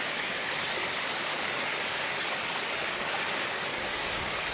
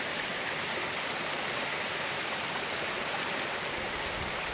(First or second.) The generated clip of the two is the first